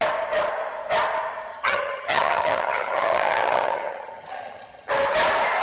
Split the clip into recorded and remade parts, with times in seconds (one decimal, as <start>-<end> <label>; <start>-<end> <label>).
0.0-1.5 recorded; 1.5-4.9 remade; 4.9-5.6 recorded